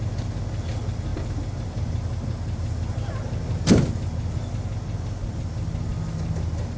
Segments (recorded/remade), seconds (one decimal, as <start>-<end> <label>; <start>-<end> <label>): 0.0-6.8 recorded